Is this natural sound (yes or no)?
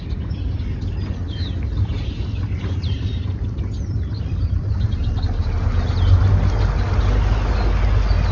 yes